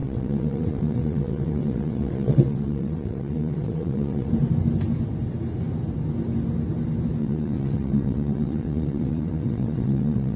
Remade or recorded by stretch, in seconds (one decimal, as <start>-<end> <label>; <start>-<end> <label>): 0.0-4.3 remade; 4.3-7.2 recorded; 7.2-10.4 remade